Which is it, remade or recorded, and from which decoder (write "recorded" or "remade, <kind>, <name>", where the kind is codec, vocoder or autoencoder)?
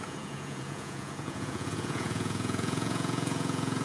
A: remade, vocoder, Vocos